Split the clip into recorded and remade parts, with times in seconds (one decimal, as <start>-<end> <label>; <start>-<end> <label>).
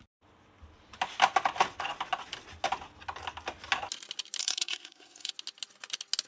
0.0-4.4 recorded; 4.4-5.3 remade; 5.3-6.3 recorded